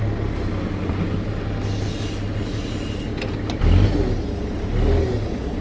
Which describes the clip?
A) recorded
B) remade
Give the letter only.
A